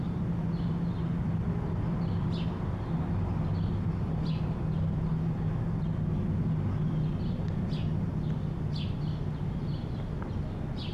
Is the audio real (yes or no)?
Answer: yes